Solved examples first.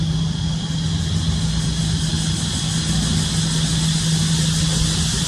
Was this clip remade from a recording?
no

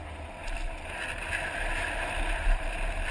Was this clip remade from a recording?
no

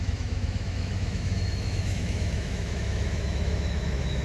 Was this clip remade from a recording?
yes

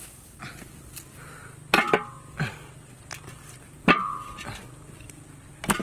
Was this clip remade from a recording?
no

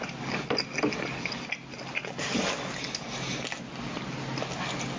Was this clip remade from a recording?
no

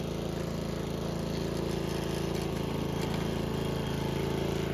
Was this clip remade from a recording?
no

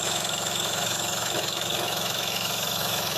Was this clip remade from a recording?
yes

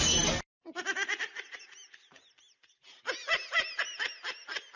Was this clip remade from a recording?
no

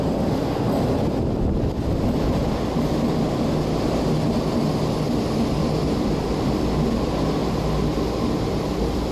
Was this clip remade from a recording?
no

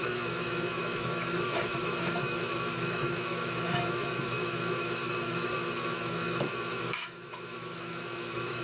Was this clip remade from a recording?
yes